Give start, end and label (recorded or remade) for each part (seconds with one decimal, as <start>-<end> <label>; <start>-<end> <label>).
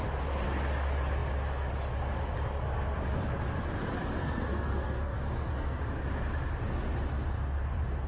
0.0-4.2 recorded; 4.2-5.8 remade; 5.8-8.1 recorded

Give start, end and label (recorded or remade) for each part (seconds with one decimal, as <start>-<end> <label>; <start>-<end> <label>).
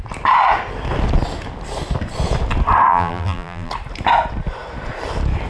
0.0-2.9 recorded; 2.9-3.7 remade; 3.7-5.5 recorded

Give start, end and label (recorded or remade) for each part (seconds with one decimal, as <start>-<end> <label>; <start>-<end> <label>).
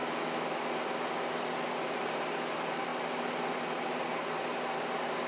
0.0-1.8 recorded; 1.8-2.9 remade; 2.9-3.5 recorded; 3.5-4.2 remade; 4.2-5.3 recorded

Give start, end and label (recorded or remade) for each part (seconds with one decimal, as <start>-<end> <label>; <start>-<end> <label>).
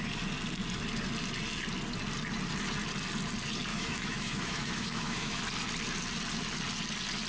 0.0-3.7 recorded; 3.7-5.4 remade; 5.4-7.3 recorded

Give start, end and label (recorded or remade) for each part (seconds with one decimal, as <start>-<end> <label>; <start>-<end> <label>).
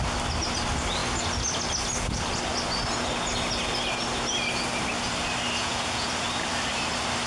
0.0-5.6 recorded; 5.6-6.1 remade; 6.1-7.3 recorded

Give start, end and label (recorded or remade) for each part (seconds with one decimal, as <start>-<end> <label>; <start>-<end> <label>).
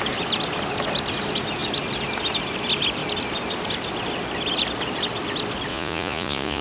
0.0-5.7 recorded; 5.7-6.6 remade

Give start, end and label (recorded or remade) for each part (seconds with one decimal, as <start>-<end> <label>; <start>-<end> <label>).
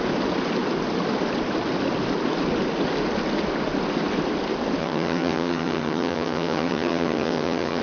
0.0-4.8 recorded; 4.8-7.8 remade